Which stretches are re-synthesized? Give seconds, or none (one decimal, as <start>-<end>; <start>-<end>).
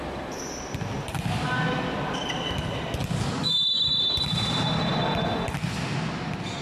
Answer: 3.4-4.0